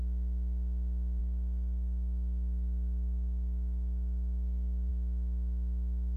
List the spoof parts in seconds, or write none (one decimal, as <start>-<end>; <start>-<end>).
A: 1.2-4.9